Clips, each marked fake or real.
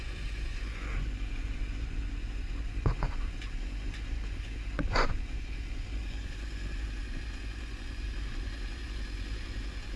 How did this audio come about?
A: fake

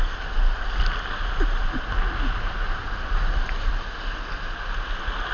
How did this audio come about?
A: real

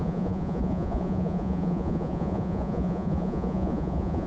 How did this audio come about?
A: fake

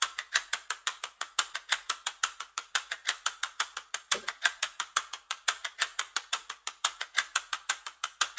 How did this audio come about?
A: fake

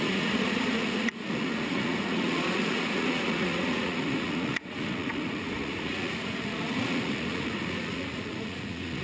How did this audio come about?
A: fake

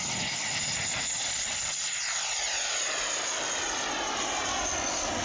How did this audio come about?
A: real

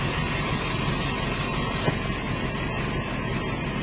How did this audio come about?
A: real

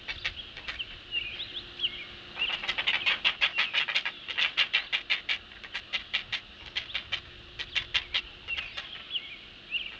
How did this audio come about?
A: real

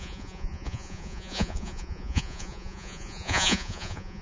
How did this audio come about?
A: fake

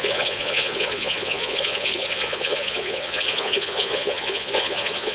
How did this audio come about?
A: fake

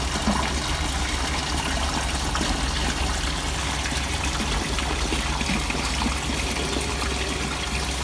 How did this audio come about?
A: real